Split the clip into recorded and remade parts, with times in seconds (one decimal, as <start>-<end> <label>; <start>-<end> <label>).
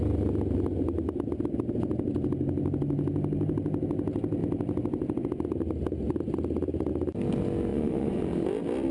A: 0.0-7.7 recorded; 7.7-8.2 remade; 8.2-8.9 recorded